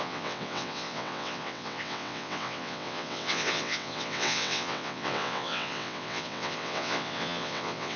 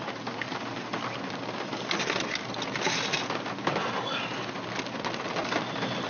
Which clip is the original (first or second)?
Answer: second